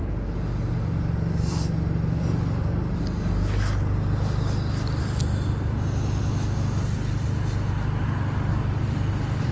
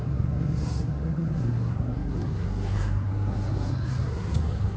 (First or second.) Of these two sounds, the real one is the first